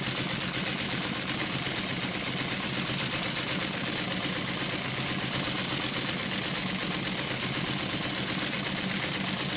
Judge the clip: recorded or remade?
recorded